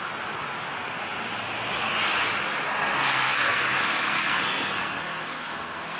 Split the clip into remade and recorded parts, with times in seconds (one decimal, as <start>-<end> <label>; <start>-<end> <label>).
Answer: 0.0-2.9 recorded; 2.9-6.0 remade